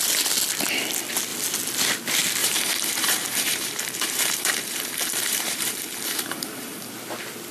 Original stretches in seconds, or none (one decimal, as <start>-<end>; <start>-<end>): 0.0-2.4; 6.9-7.5

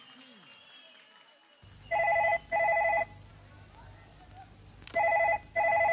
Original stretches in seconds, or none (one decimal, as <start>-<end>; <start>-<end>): 0.0-0.5; 2.4-5.9

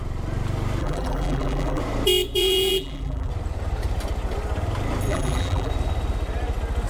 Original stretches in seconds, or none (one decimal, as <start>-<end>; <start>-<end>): 0.0-0.8; 1.8-2.4; 3.3-5.1; 5.7-6.9

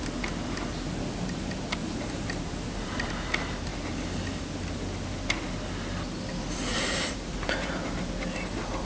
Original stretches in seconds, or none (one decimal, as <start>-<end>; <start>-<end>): 0.0-1.8; 3.1-6.7; 7.7-8.8

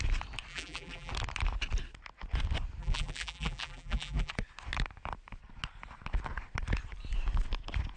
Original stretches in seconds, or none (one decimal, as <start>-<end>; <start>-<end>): 0.0-0.5; 1.1-2.8; 4.3-8.0

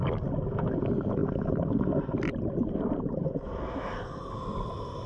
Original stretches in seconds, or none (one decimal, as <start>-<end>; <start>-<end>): 0.0-5.1

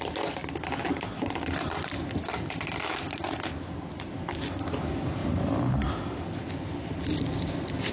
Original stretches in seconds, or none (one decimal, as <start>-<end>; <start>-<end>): 0.0-5.2; 6.3-7.9

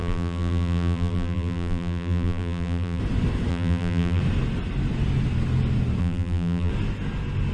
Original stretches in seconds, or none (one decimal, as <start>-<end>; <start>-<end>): 3.0-3.5; 4.2-6.0; 6.7-7.5